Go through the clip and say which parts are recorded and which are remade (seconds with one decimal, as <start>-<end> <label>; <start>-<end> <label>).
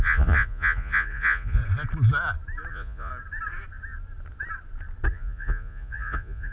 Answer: 0.0-1.6 remade; 1.6-2.7 recorded; 2.7-3.1 remade; 3.1-5.1 recorded; 5.1-6.5 remade